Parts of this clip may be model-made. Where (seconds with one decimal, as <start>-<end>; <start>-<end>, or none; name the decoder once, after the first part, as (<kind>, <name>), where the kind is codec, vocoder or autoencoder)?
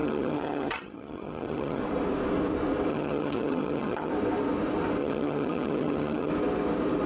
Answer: 0.0-1.8 (vocoder, HiFi-GAN); 2.9-4.1; 5.0-6.3